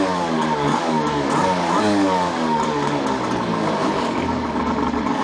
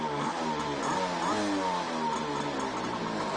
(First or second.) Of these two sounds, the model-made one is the first